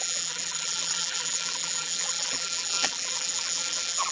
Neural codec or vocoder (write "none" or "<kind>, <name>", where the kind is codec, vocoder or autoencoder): vocoder, BigVGAN v2